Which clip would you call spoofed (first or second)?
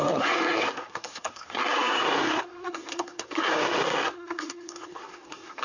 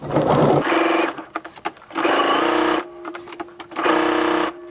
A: first